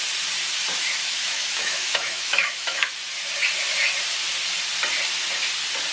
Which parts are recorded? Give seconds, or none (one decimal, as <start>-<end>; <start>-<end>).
0.0-1.0; 2.9-5.9